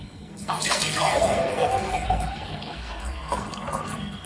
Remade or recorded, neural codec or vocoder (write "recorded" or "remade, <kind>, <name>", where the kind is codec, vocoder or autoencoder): remade, codec, SNAC